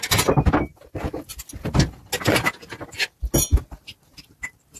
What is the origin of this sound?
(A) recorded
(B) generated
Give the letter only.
A